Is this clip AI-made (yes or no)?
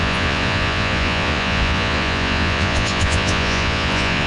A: yes